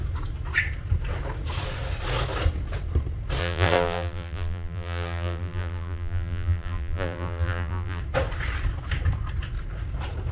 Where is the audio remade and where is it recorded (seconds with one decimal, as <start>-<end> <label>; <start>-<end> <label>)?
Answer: 0.0-3.4 recorded; 3.4-8.0 remade; 8.0-10.3 recorded